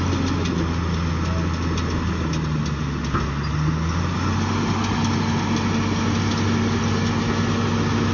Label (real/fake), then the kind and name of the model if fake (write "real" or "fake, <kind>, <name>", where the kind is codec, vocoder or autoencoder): real